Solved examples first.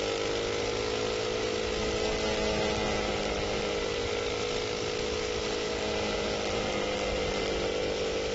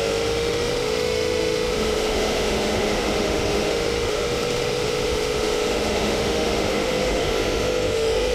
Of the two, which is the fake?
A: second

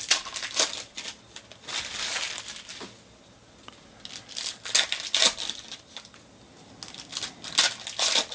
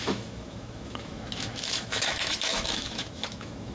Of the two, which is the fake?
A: second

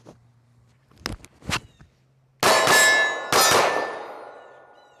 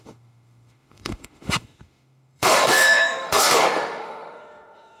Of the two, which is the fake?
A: second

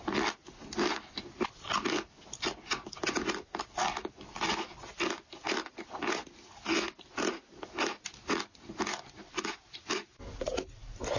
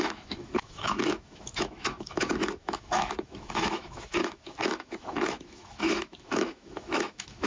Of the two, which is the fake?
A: second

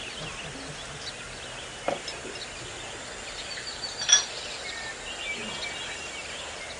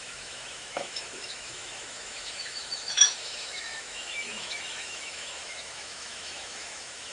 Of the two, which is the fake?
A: second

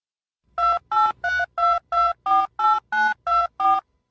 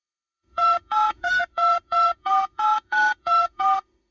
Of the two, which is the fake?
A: second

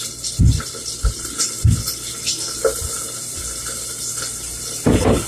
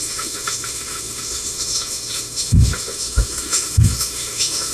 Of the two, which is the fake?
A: second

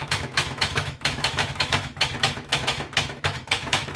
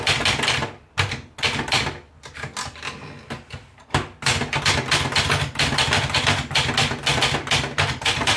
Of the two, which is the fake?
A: first